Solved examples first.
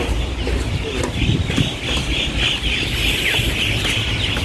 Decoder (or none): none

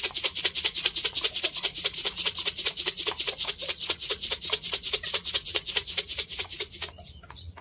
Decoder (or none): vocoder, Vocos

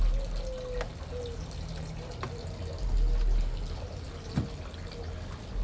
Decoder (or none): none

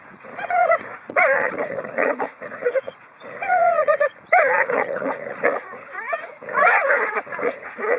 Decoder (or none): vocoder, Vocos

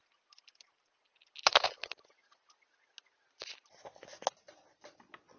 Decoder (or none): none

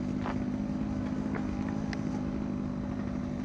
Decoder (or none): none